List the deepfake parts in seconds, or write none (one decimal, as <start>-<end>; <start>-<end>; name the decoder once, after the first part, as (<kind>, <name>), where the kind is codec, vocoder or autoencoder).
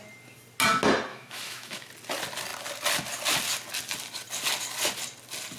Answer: 1.1-1.9 (autoencoder, DAC-VAE)